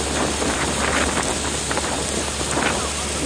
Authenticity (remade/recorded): recorded